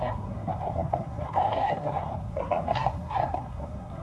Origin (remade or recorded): remade